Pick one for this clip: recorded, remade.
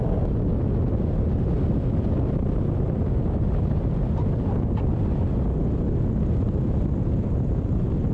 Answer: recorded